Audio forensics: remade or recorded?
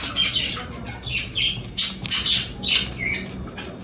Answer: recorded